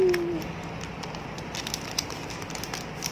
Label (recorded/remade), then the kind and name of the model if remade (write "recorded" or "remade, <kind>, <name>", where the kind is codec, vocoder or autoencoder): recorded